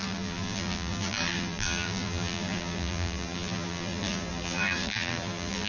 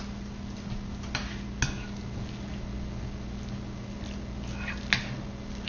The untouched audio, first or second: second